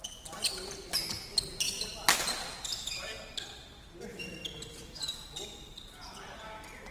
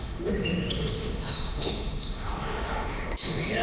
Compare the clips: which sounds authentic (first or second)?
first